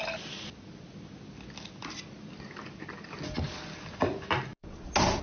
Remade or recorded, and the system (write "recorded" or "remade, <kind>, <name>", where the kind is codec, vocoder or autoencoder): recorded